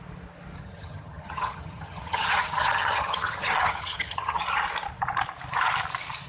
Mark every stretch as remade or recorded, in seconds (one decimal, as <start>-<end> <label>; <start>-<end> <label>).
0.0-0.6 recorded; 0.6-4.4 remade; 4.4-6.3 recorded